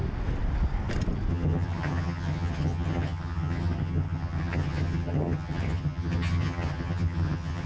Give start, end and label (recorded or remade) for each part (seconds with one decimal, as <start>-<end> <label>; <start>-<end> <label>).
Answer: 0.0-1.3 recorded; 1.3-7.7 remade